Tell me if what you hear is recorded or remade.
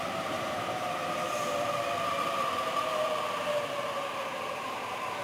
remade